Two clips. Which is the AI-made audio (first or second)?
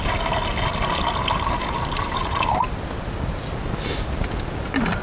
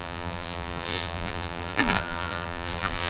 second